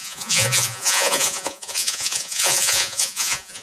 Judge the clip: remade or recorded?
remade